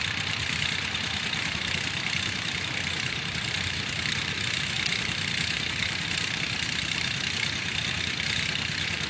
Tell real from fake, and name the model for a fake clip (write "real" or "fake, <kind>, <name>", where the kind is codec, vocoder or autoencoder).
fake, vocoder, BigVGAN v2